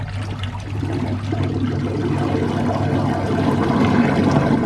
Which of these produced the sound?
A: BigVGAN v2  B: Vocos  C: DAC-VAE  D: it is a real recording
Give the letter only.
D